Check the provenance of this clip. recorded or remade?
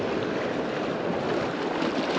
recorded